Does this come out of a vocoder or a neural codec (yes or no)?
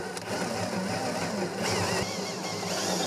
no